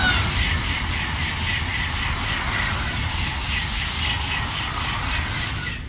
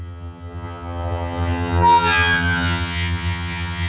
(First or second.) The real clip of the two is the first